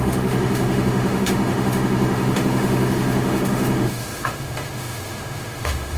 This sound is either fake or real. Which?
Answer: fake